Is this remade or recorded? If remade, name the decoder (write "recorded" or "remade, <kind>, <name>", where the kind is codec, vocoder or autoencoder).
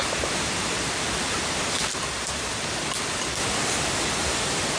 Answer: recorded